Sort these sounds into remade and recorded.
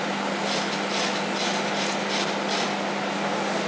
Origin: recorded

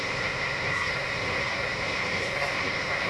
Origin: remade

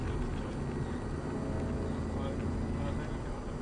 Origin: recorded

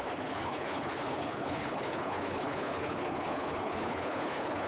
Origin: remade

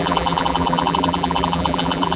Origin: remade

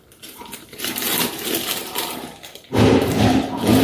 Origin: remade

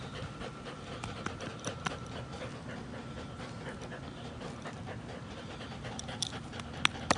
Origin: recorded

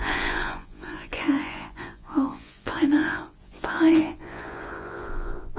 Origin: remade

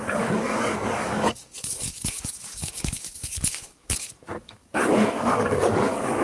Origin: remade